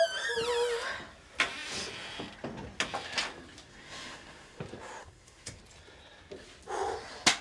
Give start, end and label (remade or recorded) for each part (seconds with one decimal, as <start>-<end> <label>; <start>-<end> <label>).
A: 0.0-3.7 recorded; 3.7-4.6 remade; 4.6-5.0 recorded; 5.0-5.6 remade; 5.6-7.4 recorded